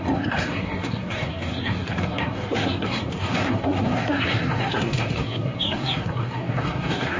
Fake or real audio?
fake